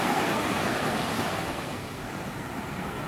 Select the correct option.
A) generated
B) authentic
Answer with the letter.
A